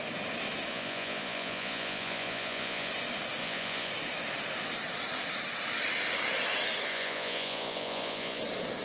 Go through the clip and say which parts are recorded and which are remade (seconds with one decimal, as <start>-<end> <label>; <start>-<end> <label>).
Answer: 0.0-0.7 recorded; 0.7-2.9 remade; 2.9-3.4 recorded; 3.4-3.9 remade; 3.9-6.9 recorded; 6.9-8.4 remade; 8.4-8.8 recorded